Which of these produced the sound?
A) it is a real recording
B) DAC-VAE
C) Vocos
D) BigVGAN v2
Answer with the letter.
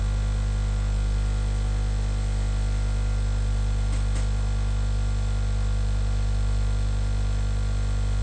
A